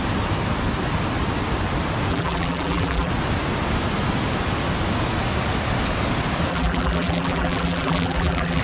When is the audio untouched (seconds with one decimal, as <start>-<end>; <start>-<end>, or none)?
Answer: 0.0-2.1; 3.1-6.5